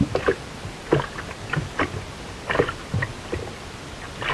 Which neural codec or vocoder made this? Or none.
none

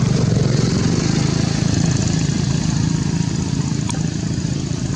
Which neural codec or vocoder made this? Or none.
vocoder, BigVGAN v2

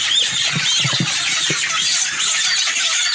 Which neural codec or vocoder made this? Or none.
none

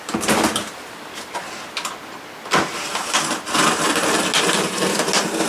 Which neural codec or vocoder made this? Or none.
none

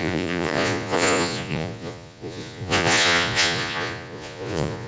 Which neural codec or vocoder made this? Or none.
vocoder, Vocos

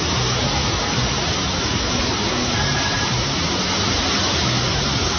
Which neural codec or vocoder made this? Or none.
none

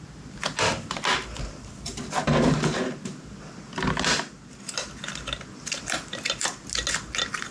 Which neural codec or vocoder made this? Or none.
none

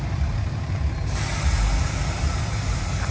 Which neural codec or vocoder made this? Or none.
none